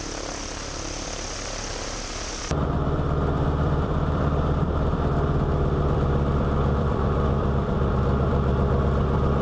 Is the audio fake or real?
fake